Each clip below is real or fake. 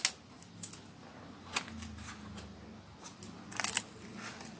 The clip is real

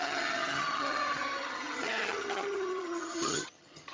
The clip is fake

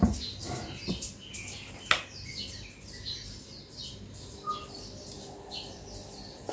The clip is real